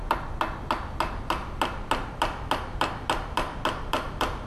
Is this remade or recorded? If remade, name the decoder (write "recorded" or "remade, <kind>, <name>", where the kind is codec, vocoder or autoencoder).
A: recorded